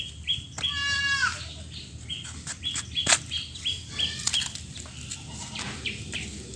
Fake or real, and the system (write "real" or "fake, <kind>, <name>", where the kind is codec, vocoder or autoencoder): real